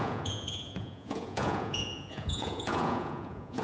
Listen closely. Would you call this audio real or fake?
fake